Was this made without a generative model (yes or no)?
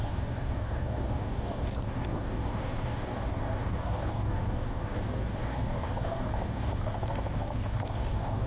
no